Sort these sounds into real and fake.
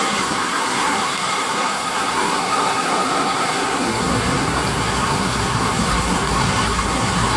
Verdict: fake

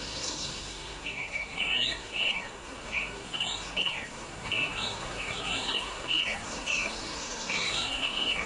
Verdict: fake